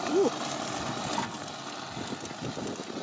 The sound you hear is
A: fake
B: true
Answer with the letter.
B